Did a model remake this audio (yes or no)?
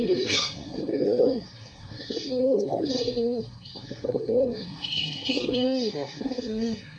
yes